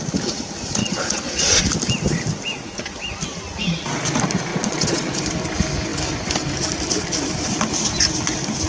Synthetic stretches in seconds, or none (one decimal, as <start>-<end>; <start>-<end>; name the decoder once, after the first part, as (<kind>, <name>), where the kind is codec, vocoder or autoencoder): 0.8-1.6 (vocoder, Vocos); 4.5-5.2